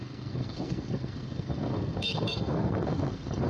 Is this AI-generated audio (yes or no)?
yes